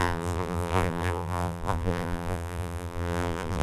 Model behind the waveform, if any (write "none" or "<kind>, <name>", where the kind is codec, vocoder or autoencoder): vocoder, BigVGAN v2